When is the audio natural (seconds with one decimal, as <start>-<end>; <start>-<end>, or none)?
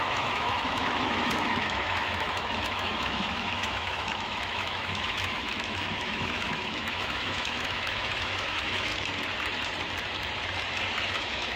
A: 8.9-11.1